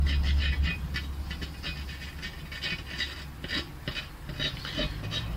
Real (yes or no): yes